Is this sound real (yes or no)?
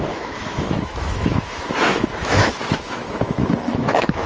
no